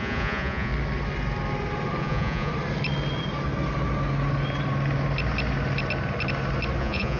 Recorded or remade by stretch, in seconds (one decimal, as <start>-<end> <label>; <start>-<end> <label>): 0.0-0.7 remade; 0.7-2.0 recorded; 2.0-2.5 remade; 2.5-6.8 recorded; 6.8-7.2 remade